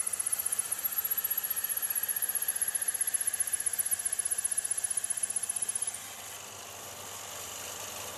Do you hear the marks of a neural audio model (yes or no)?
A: no